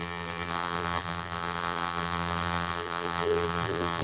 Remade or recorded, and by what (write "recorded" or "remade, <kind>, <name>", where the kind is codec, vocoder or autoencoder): remade, vocoder, BigVGAN v2